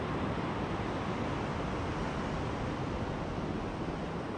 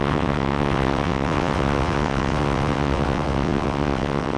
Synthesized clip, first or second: second